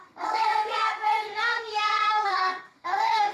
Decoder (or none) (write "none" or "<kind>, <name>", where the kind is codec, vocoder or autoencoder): codec, SNAC